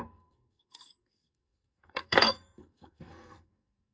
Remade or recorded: remade